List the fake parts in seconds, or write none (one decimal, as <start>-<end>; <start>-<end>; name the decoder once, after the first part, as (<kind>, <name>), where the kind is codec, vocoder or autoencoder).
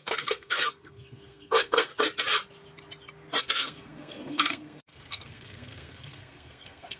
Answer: 0.0-1.9 (codec, SNAC); 3.4-7.0